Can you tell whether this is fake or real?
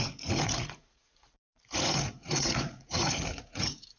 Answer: fake